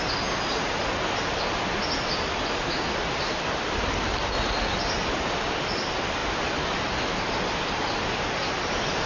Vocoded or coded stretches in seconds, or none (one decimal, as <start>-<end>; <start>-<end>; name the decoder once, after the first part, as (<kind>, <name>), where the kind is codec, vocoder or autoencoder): none

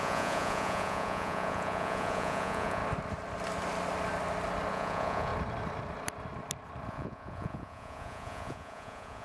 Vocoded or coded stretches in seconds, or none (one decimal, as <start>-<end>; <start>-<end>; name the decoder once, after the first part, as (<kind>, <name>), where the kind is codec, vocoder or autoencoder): 0.0-2.8 (vocoder, Vocos); 4.7-5.3; 6.9-9.2

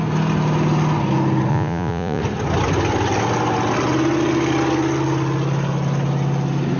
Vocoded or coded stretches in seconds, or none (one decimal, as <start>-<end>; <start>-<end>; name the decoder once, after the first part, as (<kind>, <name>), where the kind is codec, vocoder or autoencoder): 1.5-2.2 (vocoder, Vocos)

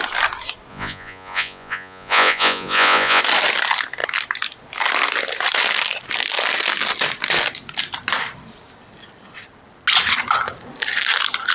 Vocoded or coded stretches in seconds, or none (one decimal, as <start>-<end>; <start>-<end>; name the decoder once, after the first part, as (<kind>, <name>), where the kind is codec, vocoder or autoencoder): 0.7-3.2 (vocoder, Vocos)

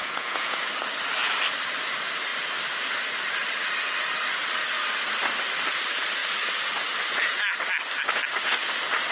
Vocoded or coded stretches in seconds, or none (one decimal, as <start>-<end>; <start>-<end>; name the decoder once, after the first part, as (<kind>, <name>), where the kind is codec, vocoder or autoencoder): 0.0-0.7 (vocoder, Vocos)

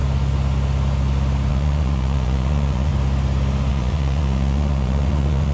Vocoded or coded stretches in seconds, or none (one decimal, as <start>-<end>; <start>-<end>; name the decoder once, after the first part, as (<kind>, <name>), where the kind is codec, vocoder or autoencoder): 1.5-2.9 (vocoder, Vocos); 3.7-5.5